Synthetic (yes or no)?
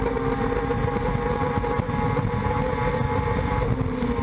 no